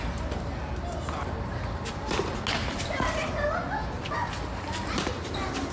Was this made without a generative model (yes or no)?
yes